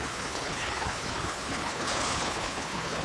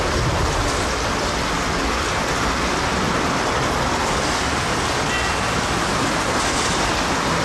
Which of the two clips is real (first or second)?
second